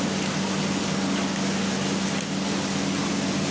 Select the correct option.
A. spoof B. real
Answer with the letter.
B